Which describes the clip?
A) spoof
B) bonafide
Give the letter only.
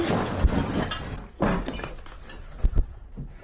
B